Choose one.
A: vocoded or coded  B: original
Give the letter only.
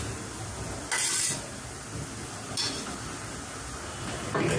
B